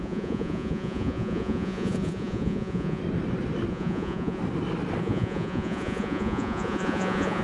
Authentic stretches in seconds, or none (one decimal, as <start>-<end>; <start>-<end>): 3.0-3.7; 4.4-5.0